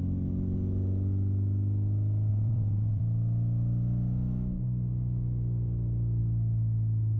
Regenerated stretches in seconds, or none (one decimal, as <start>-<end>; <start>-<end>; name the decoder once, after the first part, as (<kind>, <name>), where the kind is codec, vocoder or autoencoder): 2.3-3.0 (vocoder, WaveNeXt)